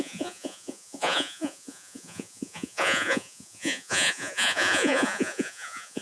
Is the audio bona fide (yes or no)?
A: no